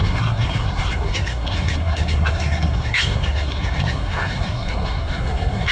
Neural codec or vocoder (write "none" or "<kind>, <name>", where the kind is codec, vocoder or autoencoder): codec, SNAC